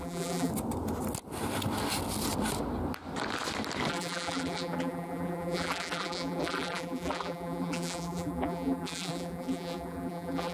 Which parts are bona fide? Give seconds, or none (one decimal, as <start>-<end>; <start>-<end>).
0.5-3.9